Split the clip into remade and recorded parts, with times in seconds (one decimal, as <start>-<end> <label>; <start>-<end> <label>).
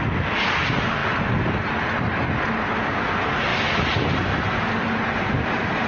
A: 0.0-5.9 recorded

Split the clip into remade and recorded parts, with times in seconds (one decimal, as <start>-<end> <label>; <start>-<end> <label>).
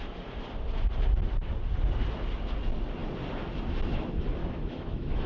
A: 0.0-4.4 recorded; 4.4-5.3 remade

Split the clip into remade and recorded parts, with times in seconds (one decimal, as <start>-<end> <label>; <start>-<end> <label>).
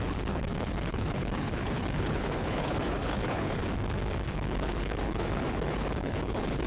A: 0.0-3.6 remade; 3.6-4.3 recorded; 4.3-6.7 remade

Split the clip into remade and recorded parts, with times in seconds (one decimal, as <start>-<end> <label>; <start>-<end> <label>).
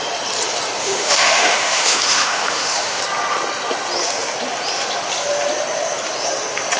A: 0.0-0.8 recorded; 0.8-3.0 remade; 3.0-6.8 recorded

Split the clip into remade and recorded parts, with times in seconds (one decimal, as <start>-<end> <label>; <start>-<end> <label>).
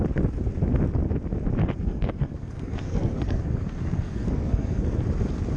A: 0.0-1.6 recorded; 1.6-5.0 remade; 5.0-5.6 recorded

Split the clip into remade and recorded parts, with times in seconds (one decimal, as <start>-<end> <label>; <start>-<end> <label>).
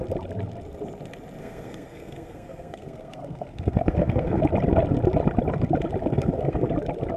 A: 0.0-1.4 recorded; 1.4-4.4 remade; 4.4-6.0 recorded; 6.0-6.7 remade; 6.7-7.2 recorded